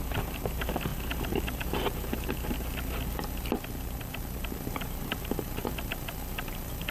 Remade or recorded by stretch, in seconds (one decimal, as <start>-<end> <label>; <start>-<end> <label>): 0.0-6.9 recorded